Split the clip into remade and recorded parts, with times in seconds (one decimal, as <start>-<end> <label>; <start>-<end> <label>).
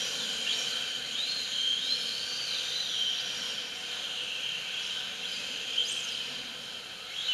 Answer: 0.0-7.3 recorded